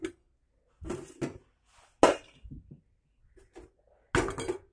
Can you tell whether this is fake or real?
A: real